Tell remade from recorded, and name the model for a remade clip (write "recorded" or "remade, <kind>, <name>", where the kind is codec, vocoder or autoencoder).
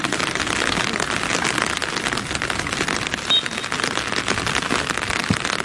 recorded